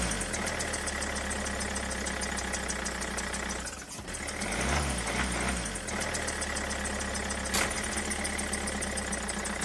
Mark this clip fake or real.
real